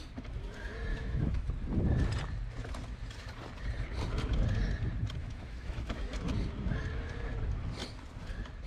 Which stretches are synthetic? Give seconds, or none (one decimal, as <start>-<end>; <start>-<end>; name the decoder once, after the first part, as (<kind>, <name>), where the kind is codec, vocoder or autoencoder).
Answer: 0.9-1.5 (autoencoder, DAC-VAE); 5.2-6.3